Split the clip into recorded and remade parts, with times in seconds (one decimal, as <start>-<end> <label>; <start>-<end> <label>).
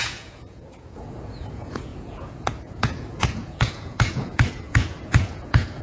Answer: 0.0-5.8 remade